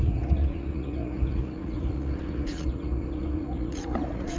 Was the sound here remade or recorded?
remade